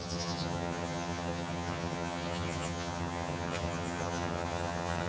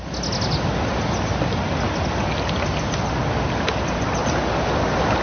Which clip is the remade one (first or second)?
first